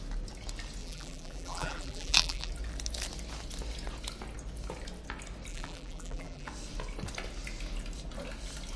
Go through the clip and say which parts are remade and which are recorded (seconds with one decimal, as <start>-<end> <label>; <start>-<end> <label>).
0.0-0.8 recorded; 0.8-2.5 remade; 2.5-5.5 recorded; 5.5-6.5 remade; 6.5-8.8 recorded